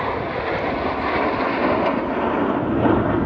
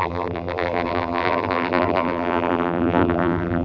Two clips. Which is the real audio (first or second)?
first